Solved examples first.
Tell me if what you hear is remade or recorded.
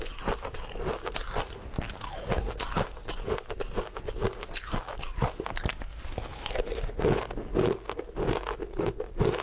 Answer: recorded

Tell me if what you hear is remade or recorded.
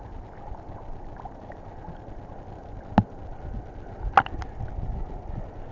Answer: recorded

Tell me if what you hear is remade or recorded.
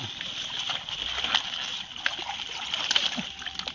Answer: recorded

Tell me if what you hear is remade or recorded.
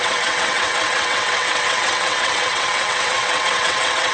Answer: remade